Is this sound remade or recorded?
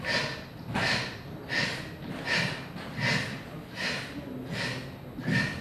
recorded